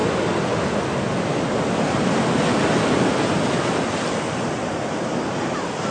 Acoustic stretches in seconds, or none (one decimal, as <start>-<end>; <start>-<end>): 0.0-5.9